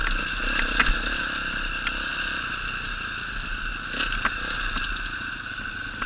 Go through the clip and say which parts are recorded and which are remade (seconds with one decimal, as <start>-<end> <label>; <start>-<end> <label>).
0.0-6.1 recorded